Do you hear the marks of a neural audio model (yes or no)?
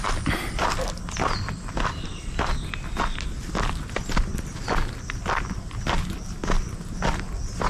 no